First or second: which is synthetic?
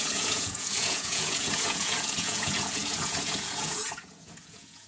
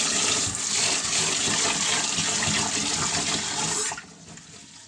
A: first